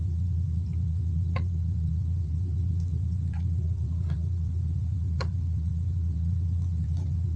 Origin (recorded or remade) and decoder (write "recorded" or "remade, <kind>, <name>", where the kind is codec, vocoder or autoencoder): remade, vocoder, WaveNeXt